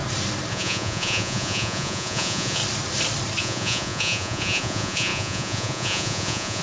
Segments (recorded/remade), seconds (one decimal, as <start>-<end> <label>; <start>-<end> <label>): 0.0-0.5 recorded; 0.5-2.6 remade; 2.6-3.4 recorded; 3.4-6.6 remade